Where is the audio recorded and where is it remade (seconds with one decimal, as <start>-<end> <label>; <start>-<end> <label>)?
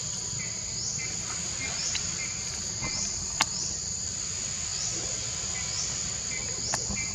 0.0-7.1 recorded